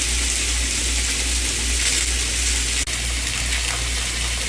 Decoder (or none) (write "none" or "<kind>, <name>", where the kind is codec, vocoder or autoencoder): none